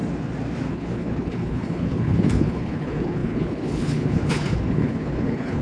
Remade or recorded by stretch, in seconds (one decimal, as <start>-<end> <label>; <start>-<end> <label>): 0.0-0.7 recorded; 0.7-5.6 remade

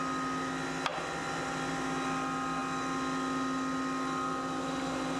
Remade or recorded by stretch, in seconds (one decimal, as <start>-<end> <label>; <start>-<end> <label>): 0.0-5.2 recorded

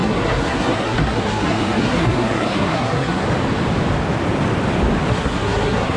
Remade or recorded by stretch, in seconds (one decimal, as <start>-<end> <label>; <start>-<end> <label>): 0.0-3.2 remade; 3.2-5.1 recorded; 5.1-6.0 remade

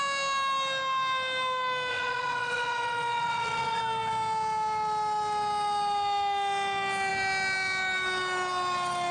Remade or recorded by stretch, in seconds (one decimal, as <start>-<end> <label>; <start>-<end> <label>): 0.0-1.9 recorded; 1.9-3.8 remade; 3.8-9.1 recorded

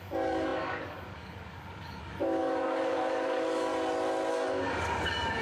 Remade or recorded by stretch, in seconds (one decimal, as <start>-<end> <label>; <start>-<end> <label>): 0.0-3.7 remade; 3.7-4.3 recorded; 4.3-5.4 remade

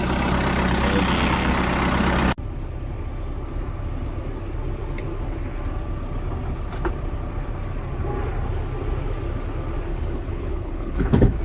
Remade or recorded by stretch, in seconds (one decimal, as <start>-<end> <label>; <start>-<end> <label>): 0.0-9.9 recorded; 9.9-11.4 remade

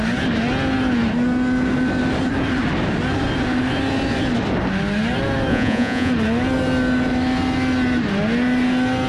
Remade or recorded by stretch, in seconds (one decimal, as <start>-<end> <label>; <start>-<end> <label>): 0.0-5.5 recorded; 5.5-6.1 remade; 6.1-9.1 recorded